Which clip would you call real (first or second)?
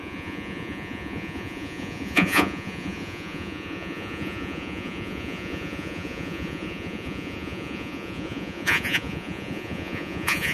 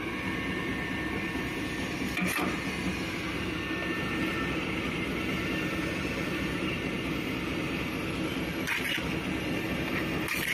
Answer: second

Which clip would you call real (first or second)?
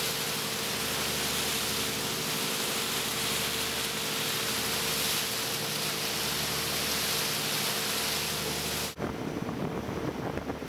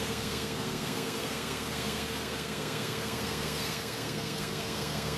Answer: first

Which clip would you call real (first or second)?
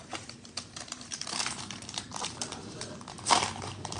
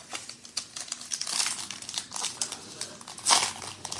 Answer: second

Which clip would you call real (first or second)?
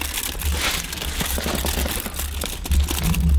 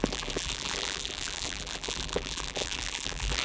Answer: first